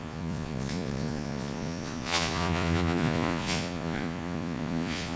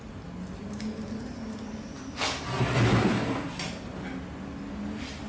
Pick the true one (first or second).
second